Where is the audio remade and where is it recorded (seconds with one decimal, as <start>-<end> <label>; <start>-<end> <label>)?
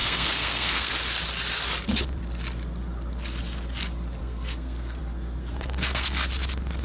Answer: 0.0-0.9 remade; 0.9-4.2 recorded; 4.2-5.0 remade; 5.0-5.4 recorded; 5.4-6.3 remade; 6.3-6.8 recorded